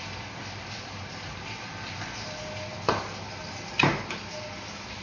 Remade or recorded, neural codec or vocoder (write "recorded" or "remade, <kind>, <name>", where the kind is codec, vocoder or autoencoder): recorded